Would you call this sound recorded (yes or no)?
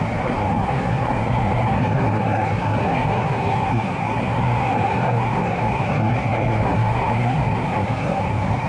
no